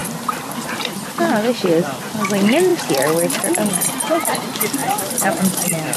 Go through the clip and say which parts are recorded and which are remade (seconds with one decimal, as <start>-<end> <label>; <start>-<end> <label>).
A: 0.0-1.2 remade; 1.2-4.8 recorded; 4.8-6.0 remade